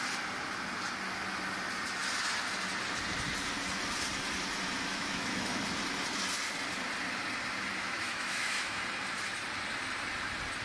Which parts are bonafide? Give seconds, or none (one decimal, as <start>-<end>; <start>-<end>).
0.0-4.9; 5.6-7.8; 8.8-10.6

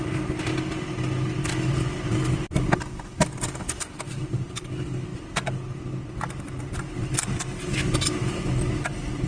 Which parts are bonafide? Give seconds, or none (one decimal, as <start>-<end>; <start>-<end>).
0.0-9.3

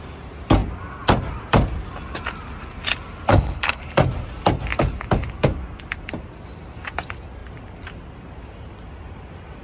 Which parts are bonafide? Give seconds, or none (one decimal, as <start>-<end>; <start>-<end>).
0.0-3.3; 3.8-9.6